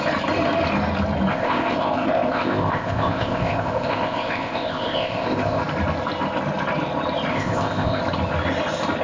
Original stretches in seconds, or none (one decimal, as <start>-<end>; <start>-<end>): 0.0-1.3; 5.6-7.3; 8.0-9.0